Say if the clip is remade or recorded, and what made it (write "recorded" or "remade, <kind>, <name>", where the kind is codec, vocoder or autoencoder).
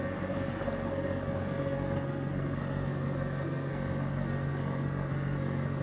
remade, codec, SNAC